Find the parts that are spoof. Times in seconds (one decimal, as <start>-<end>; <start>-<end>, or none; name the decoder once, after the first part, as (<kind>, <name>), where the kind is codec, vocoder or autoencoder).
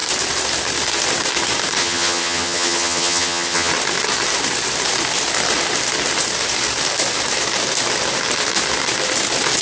1.8-3.7 (vocoder, HiFi-GAN)